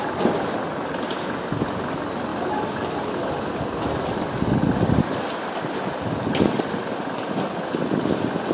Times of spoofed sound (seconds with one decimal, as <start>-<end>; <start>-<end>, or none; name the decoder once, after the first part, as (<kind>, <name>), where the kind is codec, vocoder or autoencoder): none